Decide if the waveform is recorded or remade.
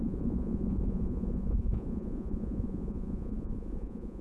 remade